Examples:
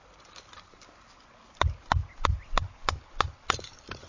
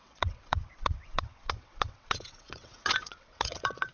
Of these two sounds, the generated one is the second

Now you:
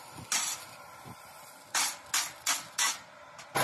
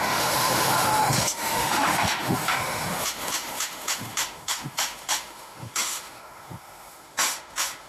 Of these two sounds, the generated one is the second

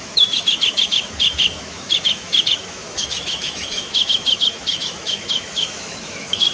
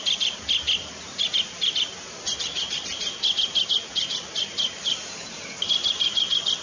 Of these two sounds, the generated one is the first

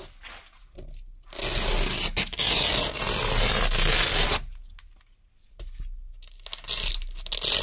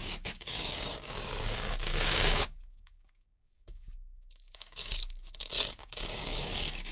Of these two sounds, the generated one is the second